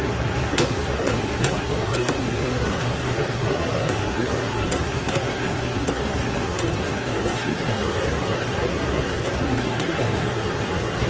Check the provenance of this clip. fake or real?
fake